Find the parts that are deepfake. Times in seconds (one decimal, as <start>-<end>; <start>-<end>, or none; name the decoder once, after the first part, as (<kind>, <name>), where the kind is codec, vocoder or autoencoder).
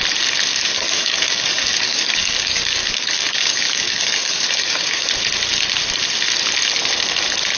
0.5-5.1 (codec, DAC)